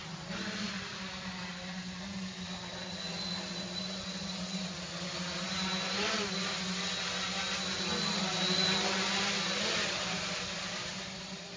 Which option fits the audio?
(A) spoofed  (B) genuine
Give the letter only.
B